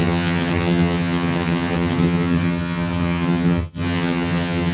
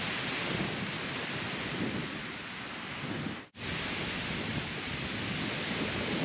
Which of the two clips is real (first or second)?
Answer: second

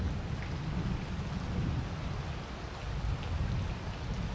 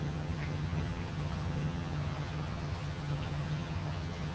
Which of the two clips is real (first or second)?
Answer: first